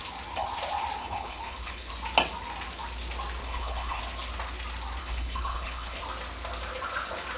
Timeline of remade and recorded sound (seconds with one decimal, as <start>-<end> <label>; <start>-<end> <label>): 0.0-1.0 recorded; 1.0-1.9 remade; 1.9-3.4 recorded; 3.4-4.0 remade; 4.0-5.0 recorded; 5.0-6.0 remade; 6.0-7.4 recorded